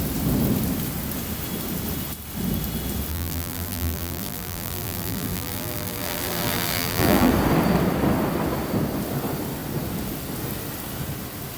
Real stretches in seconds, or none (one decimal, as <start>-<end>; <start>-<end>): 0.0-3.1; 7.3-11.6